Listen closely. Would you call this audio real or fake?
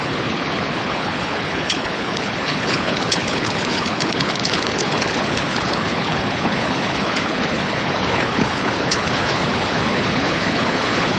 fake